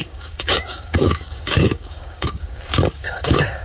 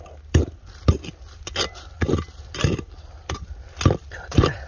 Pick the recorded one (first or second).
second